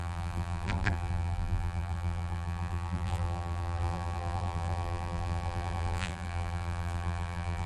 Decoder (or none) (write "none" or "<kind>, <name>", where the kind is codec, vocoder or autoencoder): vocoder, BigVGAN v2